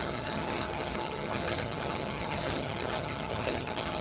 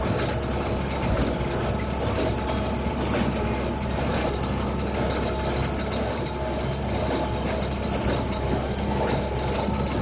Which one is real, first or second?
second